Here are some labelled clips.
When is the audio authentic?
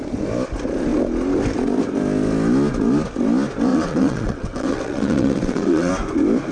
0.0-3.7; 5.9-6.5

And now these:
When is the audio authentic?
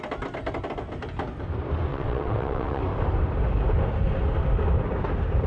0.0-1.9; 2.8-5.5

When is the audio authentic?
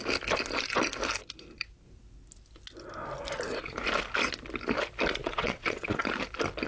0.0-5.2; 6.0-6.7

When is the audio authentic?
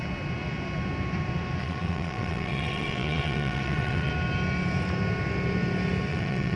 0.0-1.6; 4.1-6.1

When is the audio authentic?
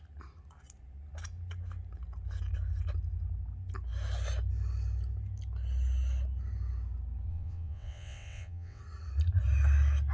0.0-7.3; 8.8-10.1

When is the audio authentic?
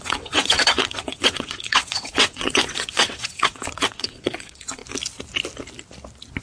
4.8-6.4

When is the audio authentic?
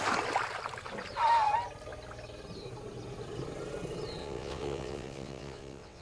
0.0-4.2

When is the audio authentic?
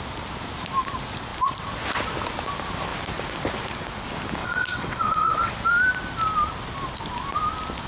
0.0-4.4; 5.5-7.9